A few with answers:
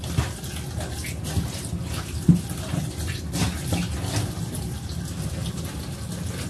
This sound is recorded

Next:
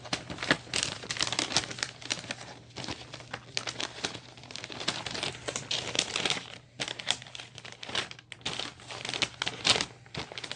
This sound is recorded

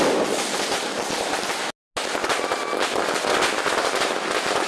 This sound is recorded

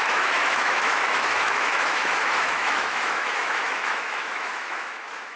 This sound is remade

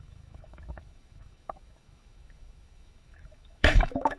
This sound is remade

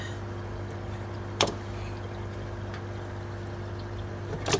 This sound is recorded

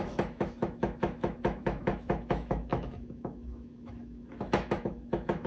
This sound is remade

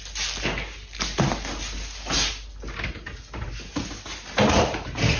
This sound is recorded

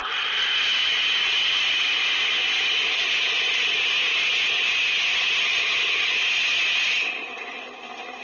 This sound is recorded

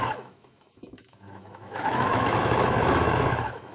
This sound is remade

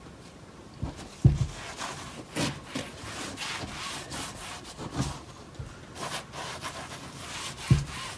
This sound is recorded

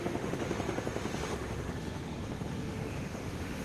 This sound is remade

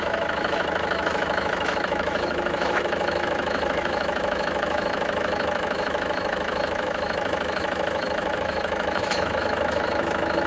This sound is remade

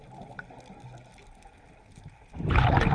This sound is recorded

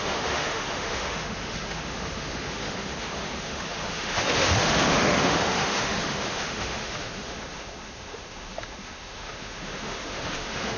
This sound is remade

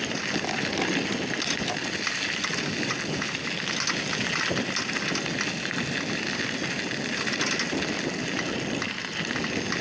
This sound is recorded